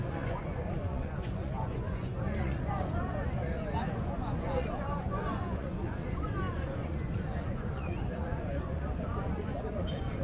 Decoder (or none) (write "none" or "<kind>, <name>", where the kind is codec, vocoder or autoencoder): vocoder, Vocos